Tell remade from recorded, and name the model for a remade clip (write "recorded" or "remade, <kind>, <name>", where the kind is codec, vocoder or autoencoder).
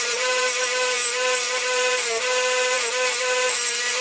remade, vocoder, BigVGAN v2